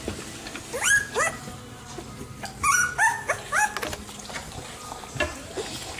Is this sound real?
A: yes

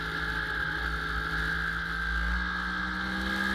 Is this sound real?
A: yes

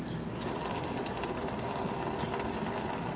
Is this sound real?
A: yes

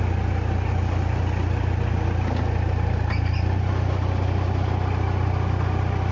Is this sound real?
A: yes